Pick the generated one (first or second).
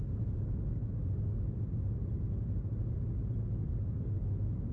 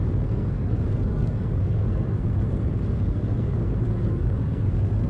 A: second